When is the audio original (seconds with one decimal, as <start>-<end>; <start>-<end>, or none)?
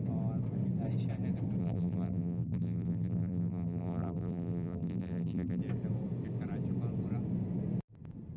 0.0-1.6; 5.6-8.4